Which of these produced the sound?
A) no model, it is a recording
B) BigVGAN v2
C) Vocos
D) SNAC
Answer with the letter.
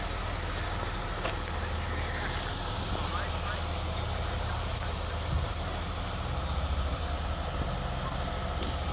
A